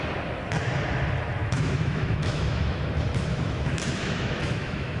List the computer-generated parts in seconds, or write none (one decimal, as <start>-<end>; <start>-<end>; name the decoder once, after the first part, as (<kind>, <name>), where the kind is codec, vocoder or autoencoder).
1.4-2.8 (autoencoder, DAC-VAE); 3.3-5.0